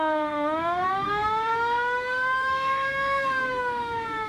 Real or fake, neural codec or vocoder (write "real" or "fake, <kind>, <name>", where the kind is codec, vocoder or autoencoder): fake, autoencoder, DAC-VAE